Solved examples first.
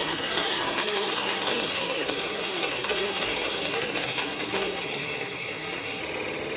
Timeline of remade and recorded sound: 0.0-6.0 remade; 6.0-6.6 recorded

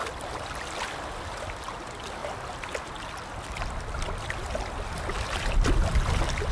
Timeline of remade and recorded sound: 0.0-6.5 recorded

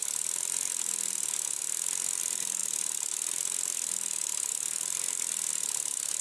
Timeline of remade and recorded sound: 0.0-6.2 recorded

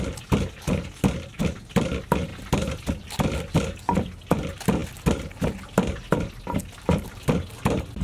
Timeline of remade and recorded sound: 0.0-8.0 recorded

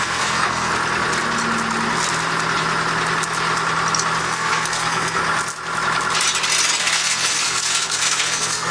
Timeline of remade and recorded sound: 0.0-0.7 remade; 0.7-4.2 recorded; 4.2-5.2 remade; 5.2-6.8 recorded; 6.8-8.7 remade

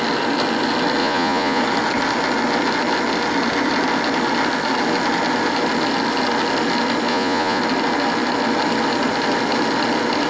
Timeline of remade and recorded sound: 0.0-1.0 recorded; 1.0-1.6 remade; 1.6-7.1 recorded; 7.1-7.6 remade; 7.6-10.3 recorded

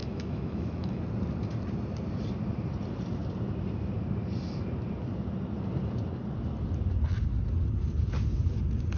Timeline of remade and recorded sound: 0.0-1.0 remade; 1.0-9.0 recorded

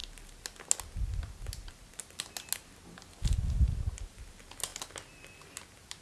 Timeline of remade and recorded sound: 0.0-6.0 recorded